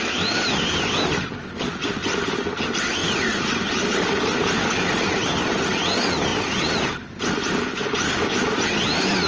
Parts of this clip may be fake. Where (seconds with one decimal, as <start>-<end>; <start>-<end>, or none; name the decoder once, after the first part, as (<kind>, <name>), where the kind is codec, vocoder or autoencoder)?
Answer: 3.0-4.5 (vocoder, BigVGAN v2); 6.3-7.2